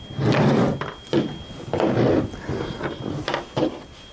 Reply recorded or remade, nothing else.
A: recorded